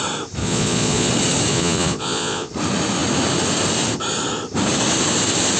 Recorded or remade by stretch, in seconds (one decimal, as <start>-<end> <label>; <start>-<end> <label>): 0.0-0.4 recorded; 0.4-1.1 remade; 1.1-1.5 recorded; 1.5-2.5 remade; 2.5-5.6 recorded